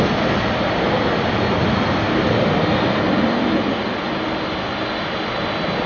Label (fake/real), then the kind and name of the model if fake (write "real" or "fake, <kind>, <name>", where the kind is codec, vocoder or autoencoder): real